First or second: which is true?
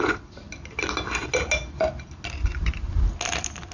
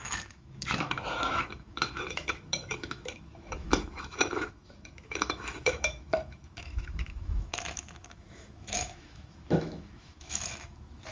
first